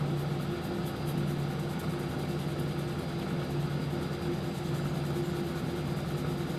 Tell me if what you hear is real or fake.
real